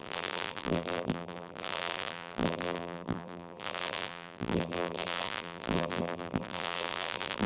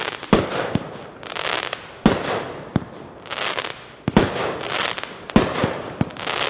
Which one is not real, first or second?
first